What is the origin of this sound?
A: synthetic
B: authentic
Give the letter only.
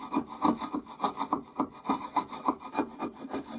B